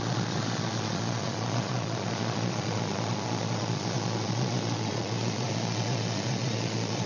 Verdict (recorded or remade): remade